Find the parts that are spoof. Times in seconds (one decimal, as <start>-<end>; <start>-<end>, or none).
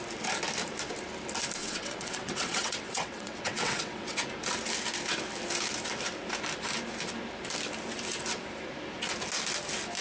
1.6-4.2